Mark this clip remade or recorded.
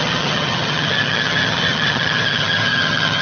remade